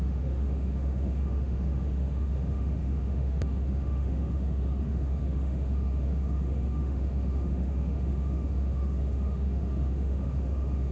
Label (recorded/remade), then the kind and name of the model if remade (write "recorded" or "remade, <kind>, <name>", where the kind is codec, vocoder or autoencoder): remade, autoencoder, DAC-VAE